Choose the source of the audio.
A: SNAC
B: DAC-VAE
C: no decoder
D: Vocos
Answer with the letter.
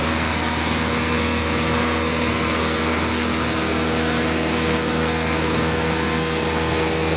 A